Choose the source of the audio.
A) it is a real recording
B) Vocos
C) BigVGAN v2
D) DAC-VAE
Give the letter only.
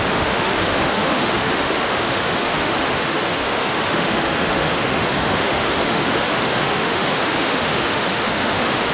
D